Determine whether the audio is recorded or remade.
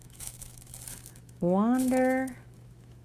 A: remade